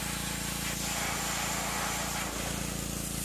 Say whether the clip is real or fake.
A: real